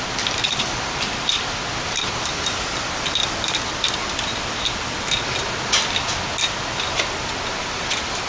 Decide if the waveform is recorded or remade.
recorded